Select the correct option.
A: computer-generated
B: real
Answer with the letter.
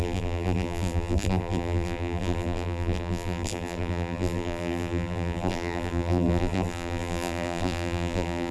A